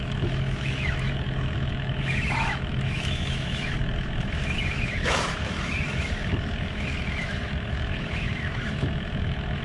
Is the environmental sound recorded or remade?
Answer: remade